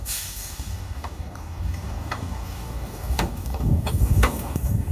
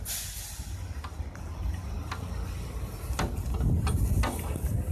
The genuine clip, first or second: second